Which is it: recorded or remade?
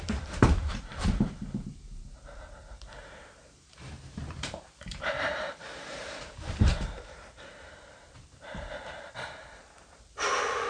remade